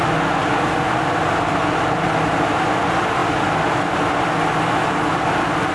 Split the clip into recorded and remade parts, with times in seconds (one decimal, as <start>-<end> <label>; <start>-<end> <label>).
0.0-5.7 recorded